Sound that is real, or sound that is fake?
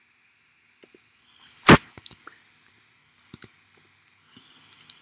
real